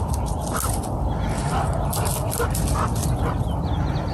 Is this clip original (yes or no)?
yes